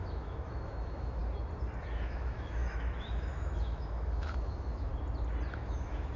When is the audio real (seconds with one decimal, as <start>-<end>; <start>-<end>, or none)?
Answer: 1.2-1.8; 4.9-5.5